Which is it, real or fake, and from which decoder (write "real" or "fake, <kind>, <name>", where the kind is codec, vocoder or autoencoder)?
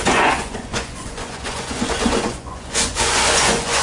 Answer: fake, vocoder, Vocos